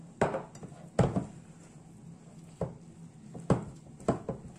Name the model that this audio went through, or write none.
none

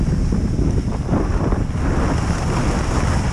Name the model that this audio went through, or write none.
none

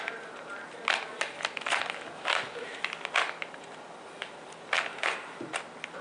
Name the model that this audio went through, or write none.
none